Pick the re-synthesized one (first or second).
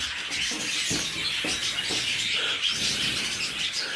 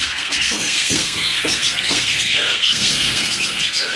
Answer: second